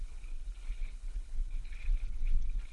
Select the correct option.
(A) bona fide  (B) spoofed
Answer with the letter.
B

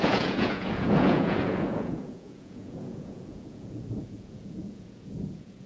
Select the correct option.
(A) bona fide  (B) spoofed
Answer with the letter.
B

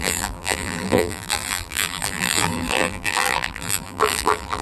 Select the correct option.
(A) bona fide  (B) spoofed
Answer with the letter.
B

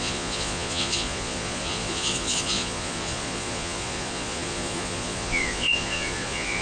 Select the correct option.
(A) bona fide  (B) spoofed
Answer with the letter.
B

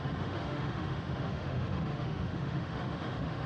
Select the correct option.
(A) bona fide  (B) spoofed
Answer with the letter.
B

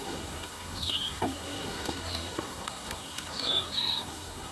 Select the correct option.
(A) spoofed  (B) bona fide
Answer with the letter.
A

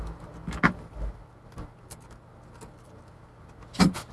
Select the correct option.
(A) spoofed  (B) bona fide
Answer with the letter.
B